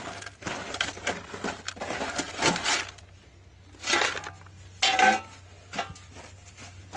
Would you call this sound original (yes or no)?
yes